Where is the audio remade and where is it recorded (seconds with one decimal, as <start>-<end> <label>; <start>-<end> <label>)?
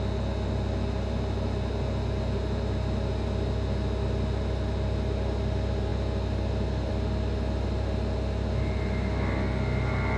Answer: 0.0-10.2 recorded